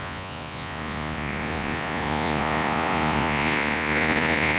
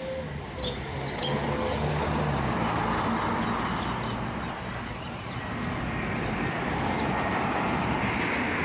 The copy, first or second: first